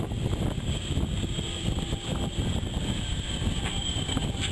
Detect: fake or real fake